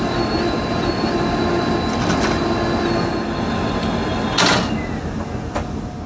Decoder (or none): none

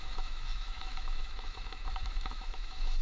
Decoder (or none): autoencoder, DAC-VAE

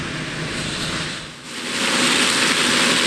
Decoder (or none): none